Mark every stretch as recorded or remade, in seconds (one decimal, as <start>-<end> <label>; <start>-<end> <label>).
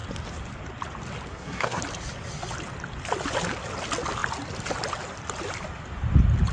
0.0-1.3 recorded; 1.3-1.8 remade; 1.8-6.5 recorded